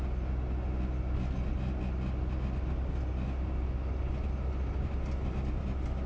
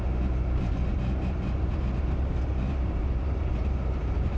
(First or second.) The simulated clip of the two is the second